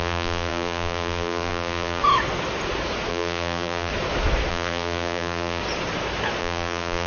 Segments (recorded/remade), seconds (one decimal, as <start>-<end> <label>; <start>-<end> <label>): 0.0-2.0 remade; 2.0-3.1 recorded; 3.1-3.9 remade; 3.9-4.5 recorded; 4.5-5.6 remade; 5.6-6.4 recorded; 6.4-7.1 remade